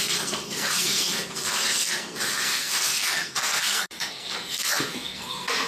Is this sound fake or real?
fake